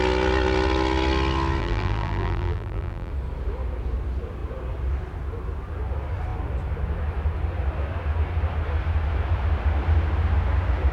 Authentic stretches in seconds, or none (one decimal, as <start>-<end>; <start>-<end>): 0.0-1.6; 3.1-10.9